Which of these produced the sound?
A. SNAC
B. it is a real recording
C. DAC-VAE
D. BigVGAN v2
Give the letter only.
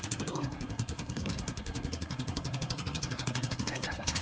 A